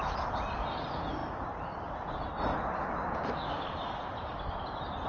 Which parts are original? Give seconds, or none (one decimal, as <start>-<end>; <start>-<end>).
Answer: 0.0-5.1